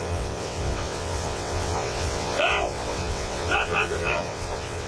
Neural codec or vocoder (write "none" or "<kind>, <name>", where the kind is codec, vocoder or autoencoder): vocoder, WaveNeXt